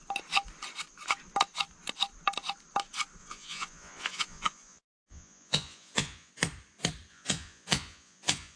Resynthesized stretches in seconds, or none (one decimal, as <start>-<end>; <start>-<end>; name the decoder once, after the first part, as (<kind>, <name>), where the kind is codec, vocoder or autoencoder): 3.2-6.3 (vocoder, Vocos); 7.1-8.6